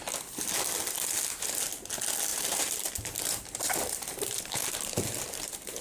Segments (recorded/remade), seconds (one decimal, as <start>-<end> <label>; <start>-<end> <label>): 0.0-2.3 recorded; 2.3-5.8 remade